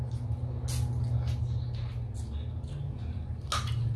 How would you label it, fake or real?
real